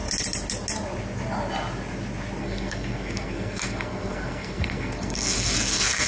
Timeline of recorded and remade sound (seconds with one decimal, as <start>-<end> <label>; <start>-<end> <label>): 0.0-2.4 recorded; 2.4-6.1 remade